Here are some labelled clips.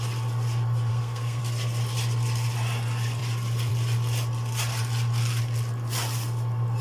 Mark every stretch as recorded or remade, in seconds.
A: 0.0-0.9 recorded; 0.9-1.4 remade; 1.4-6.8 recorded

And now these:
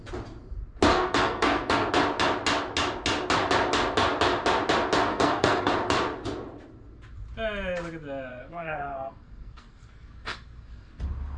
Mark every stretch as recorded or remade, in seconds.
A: 0.0-0.9 recorded; 0.9-1.9 remade; 1.9-5.1 recorded; 5.1-5.7 remade; 5.7-8.3 recorded; 8.3-11.0 remade; 11.0-11.4 recorded

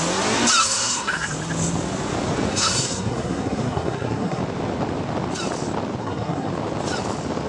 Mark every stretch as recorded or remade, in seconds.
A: 0.0-0.6 recorded; 0.6-1.3 remade; 1.3-2.5 recorded; 2.5-4.4 remade; 4.4-6.0 recorded; 6.0-6.5 remade; 6.5-7.5 recorded